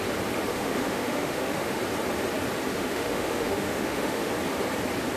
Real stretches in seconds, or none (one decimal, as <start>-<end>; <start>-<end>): 0.0-0.5; 1.8-2.7; 4.3-5.2